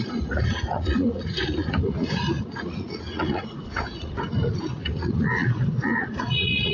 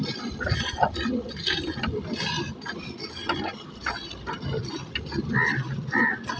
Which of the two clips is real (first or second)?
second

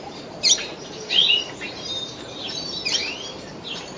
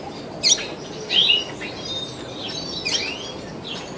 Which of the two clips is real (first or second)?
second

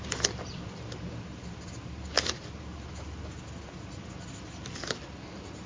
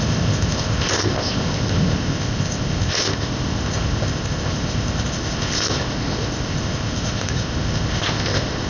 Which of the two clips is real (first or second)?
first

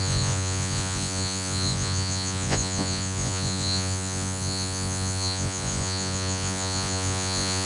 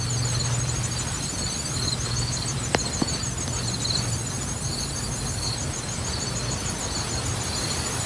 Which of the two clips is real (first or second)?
second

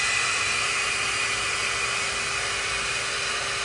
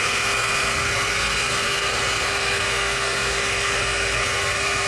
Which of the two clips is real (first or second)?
first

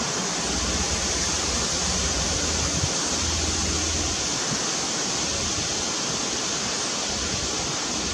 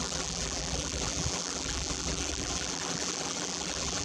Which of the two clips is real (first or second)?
first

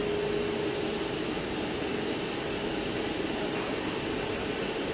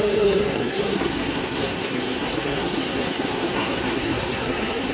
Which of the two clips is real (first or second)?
first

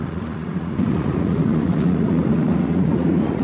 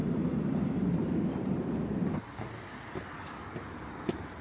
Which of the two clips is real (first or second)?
second